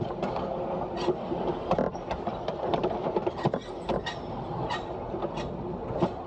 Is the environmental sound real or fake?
real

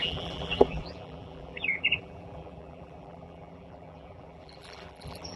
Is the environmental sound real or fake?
fake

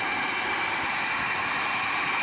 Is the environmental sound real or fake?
real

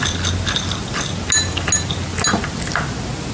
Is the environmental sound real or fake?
real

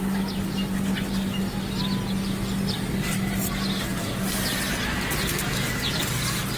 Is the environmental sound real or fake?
real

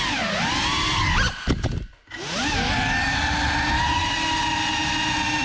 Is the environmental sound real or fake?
real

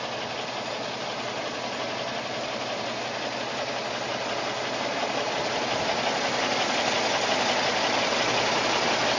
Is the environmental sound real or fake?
real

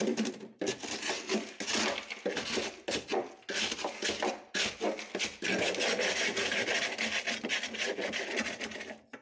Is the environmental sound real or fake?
real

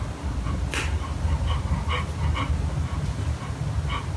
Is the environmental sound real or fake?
real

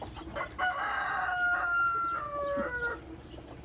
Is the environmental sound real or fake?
real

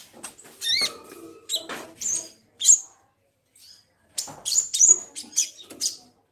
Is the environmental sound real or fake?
fake